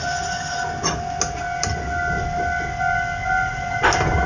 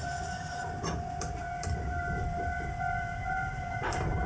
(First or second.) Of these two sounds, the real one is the first